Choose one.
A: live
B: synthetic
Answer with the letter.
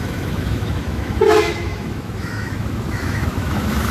B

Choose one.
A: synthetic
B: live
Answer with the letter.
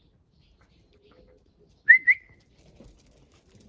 B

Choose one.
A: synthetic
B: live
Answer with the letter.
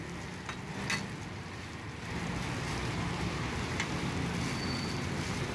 B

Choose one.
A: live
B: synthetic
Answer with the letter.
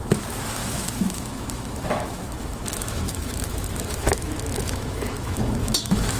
B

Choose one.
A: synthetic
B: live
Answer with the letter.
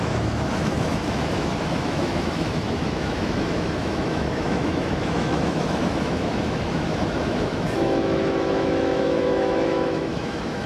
A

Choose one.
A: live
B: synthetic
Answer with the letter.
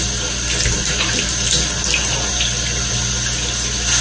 A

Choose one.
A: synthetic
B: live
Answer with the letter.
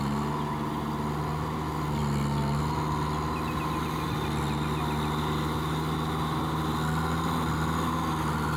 B